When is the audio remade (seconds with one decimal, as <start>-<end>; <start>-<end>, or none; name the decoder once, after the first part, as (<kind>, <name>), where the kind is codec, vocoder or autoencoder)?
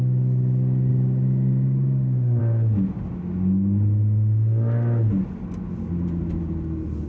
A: 0.9-2.4 (codec, DAC)